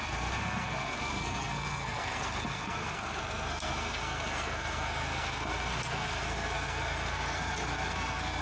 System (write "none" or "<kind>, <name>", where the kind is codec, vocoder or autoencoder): codec, SNAC